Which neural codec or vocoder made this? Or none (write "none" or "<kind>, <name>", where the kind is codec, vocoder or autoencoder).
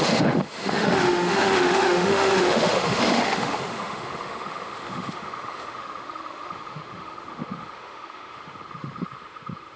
autoencoder, DAC-VAE